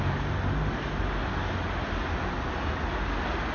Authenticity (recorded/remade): recorded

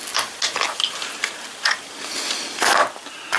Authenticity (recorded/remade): recorded